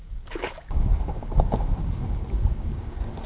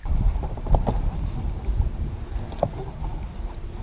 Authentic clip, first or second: second